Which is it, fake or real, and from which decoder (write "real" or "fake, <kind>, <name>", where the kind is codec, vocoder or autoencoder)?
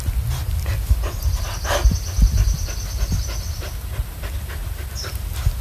real